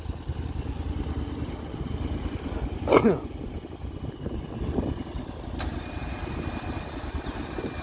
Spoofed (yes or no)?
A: no